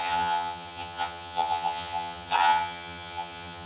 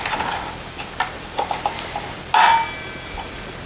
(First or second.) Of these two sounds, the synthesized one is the first